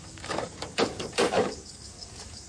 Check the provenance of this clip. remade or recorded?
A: remade